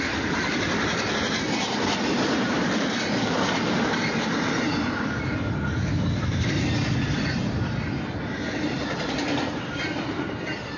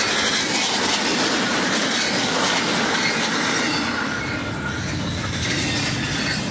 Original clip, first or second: second